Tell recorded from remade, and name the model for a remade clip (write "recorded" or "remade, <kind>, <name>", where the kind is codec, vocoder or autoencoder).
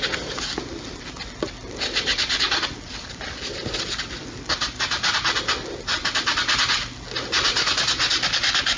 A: recorded